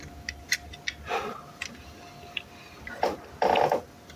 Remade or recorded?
recorded